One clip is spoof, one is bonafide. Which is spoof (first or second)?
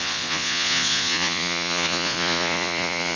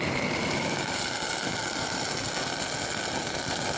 first